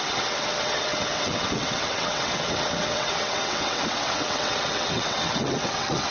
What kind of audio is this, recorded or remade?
remade